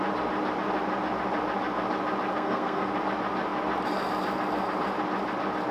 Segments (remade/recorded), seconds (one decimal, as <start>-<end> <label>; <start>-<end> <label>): 0.0-2.3 recorded; 2.3-2.9 remade; 2.9-5.7 recorded